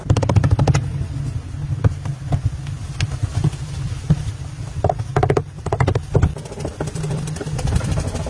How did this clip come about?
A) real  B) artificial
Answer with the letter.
A